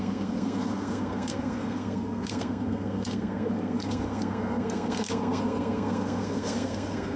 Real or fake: fake